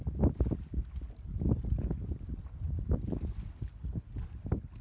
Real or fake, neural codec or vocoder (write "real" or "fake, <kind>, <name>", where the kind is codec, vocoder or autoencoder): real